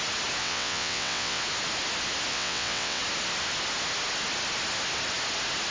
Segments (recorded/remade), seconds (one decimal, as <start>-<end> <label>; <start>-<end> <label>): 0.0-0.4 recorded; 0.4-1.4 remade; 1.4-2.3 recorded; 2.3-3.0 remade; 3.0-5.7 recorded